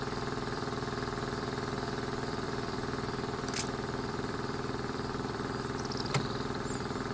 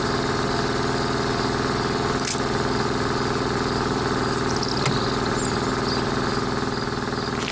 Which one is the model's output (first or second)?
first